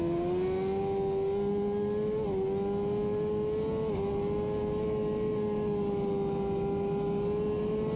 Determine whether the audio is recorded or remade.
recorded